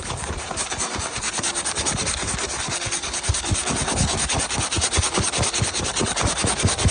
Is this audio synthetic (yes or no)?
yes